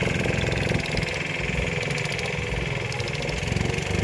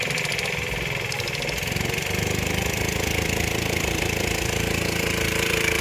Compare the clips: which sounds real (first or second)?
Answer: first